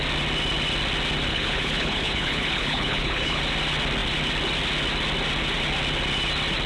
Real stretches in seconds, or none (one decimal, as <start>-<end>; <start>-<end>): 0.0-1.3; 3.4-6.7